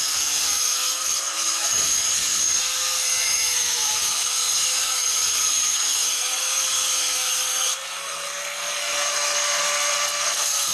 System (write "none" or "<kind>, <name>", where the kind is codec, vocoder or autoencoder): codec, SNAC